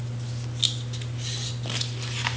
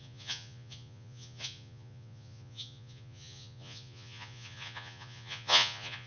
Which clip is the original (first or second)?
first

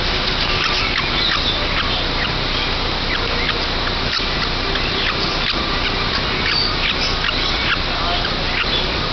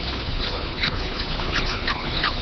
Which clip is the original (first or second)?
first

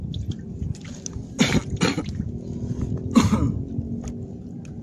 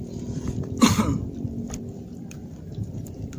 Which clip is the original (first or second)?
first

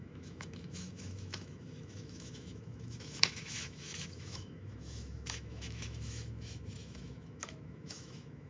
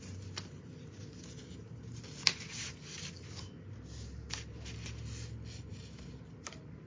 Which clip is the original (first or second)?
second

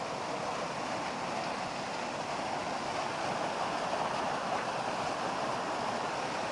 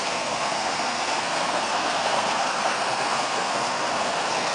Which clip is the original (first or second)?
first